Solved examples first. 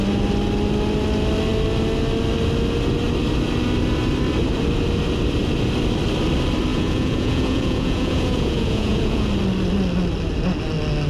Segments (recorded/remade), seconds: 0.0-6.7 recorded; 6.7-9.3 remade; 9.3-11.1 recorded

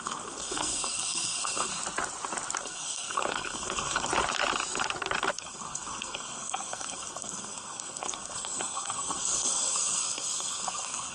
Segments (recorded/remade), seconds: 0.0-1.7 remade; 1.7-2.6 recorded; 2.6-4.1 remade; 4.1-5.3 recorded; 5.3-11.1 remade

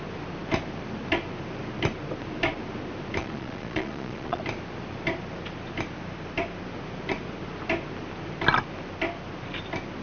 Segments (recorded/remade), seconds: 0.0-3.2 recorded; 3.2-4.4 remade; 4.4-10.0 recorded

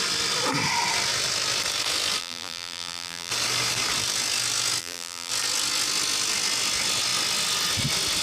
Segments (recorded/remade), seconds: 0.0-2.2 recorded; 2.2-3.3 remade; 3.3-4.8 recorded; 4.8-5.3 remade; 5.3-8.2 recorded

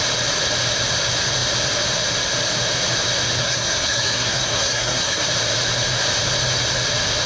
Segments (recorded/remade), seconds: 0.0-3.4 recorded; 3.4-5.2 remade; 5.2-7.3 recorded

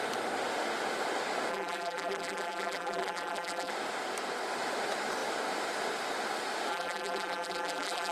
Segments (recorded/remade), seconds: 0.0-1.5 recorded; 1.5-3.7 remade; 3.7-6.7 recorded; 6.7-8.1 remade

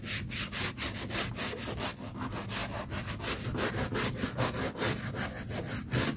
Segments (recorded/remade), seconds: 0.0-6.2 recorded

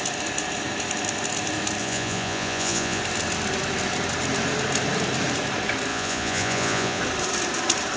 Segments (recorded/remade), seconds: 0.0-1.8 recorded; 1.8-3.0 remade; 3.0-5.9 recorded; 5.9-7.0 remade; 7.0-8.0 recorded